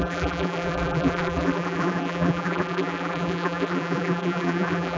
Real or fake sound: fake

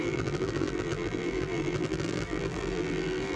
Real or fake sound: fake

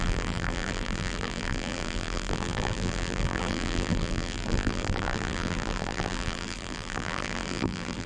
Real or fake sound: fake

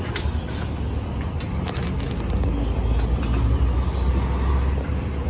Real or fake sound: real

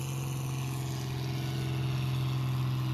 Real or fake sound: real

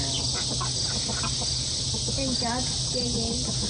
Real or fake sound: real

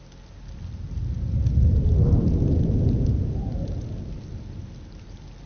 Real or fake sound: real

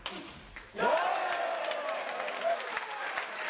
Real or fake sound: fake